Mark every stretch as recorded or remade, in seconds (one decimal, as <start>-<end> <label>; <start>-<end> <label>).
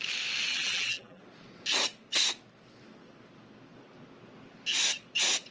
0.0-0.5 recorded; 0.5-1.2 remade; 1.2-5.5 recorded